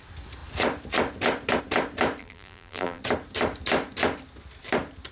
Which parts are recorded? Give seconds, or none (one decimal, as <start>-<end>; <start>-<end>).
0.0-2.2; 3.0-5.1